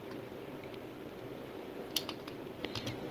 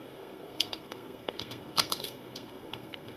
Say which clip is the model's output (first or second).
second